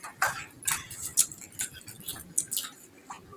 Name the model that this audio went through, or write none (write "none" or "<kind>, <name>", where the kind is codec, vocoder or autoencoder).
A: none